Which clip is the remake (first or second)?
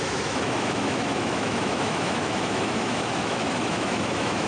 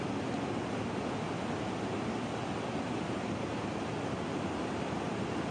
first